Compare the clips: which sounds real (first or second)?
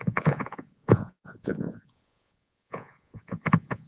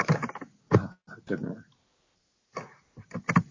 second